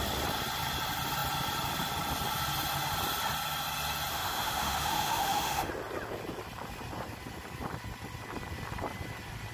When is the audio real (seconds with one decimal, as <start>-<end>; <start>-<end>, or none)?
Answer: 0.0-4.1; 5.7-9.5